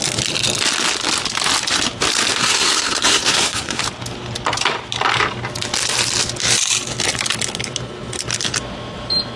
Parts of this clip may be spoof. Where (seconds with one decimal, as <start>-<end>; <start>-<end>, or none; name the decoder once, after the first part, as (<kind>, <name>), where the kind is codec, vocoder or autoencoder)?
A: 2.4-3.8 (codec, SNAC)